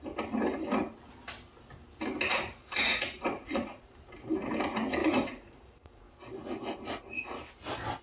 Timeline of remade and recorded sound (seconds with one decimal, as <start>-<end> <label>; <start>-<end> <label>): 0.0-2.3 recorded; 2.3-3.8 remade; 3.8-5.0 recorded; 5.0-6.0 remade; 6.0-8.0 recorded